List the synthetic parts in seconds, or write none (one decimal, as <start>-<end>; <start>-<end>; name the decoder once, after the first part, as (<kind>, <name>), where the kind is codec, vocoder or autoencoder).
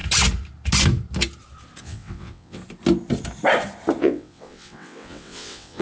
1.8-2.6 (vocoder, WaveNeXt); 4.0-5.8